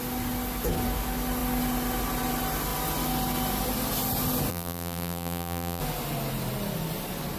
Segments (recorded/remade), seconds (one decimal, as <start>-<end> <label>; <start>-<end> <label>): 0.0-4.5 recorded; 4.5-5.8 remade; 5.8-7.4 recorded